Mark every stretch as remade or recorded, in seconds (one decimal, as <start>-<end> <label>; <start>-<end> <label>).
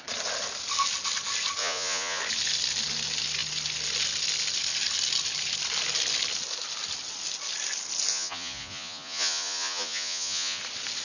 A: 0.0-1.6 recorded; 1.6-2.2 remade; 2.2-8.1 recorded; 8.1-10.6 remade; 10.6-11.0 recorded